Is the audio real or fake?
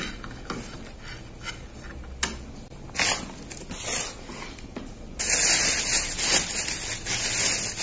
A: real